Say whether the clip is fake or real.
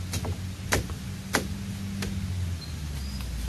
real